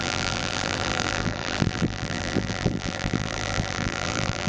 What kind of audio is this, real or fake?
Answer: fake